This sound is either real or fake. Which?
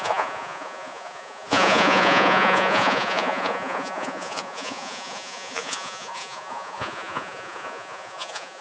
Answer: fake